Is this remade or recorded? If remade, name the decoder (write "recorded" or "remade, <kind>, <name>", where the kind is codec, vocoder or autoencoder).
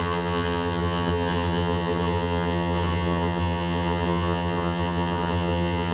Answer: remade, vocoder, HiFi-GAN